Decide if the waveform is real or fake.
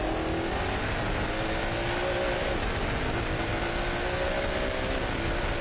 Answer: real